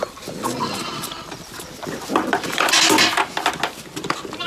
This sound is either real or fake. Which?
real